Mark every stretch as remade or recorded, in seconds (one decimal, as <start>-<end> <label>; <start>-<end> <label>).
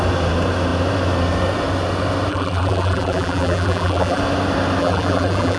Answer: 0.0-2.3 recorded; 2.3-4.2 remade; 4.2-4.8 recorded; 4.8-5.6 remade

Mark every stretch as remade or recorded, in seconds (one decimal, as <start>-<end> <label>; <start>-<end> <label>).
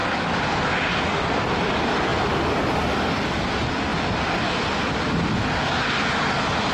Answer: 0.0-6.7 recorded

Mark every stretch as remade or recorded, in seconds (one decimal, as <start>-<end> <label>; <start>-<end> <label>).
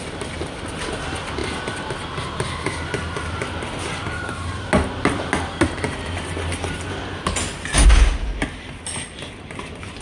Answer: 0.0-10.0 recorded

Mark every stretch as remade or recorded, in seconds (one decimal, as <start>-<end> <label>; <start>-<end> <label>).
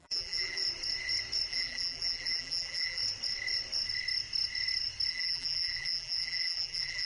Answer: 0.0-0.6 remade; 0.6-1.5 recorded; 1.5-3.0 remade; 3.0-5.1 recorded; 5.1-7.1 remade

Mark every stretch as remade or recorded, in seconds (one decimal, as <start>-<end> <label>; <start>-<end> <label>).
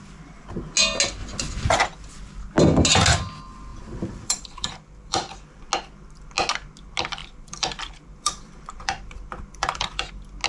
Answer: 0.0-3.7 recorded; 3.7-5.6 remade; 5.6-7.2 recorded; 7.2-10.1 remade; 10.1-10.5 recorded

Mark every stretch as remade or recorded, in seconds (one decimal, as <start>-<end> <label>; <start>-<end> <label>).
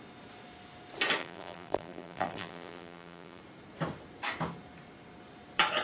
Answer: 0.0-1.2 recorded; 1.2-3.4 remade; 3.4-5.8 recorded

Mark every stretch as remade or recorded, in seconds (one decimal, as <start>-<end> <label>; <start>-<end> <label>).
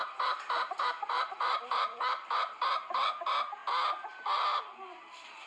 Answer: 0.0-2.0 remade; 2.0-5.5 recorded